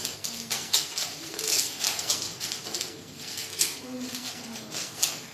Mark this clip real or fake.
fake